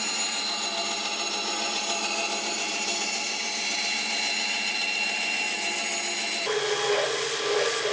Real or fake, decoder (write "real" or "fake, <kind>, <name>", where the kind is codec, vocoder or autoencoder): real